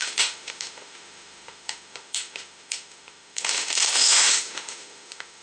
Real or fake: fake